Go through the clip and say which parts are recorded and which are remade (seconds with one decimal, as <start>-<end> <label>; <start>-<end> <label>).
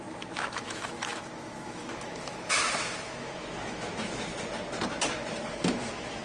0.0-4.3 remade; 4.3-5.5 recorded; 5.5-6.2 remade